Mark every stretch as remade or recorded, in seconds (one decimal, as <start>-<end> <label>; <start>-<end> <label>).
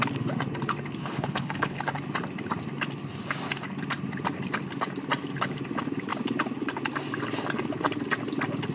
0.0-1.0 recorded; 1.0-1.8 remade; 1.8-8.7 recorded